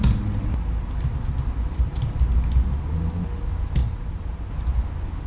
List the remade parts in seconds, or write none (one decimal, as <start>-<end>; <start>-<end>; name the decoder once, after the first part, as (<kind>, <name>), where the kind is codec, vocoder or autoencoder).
none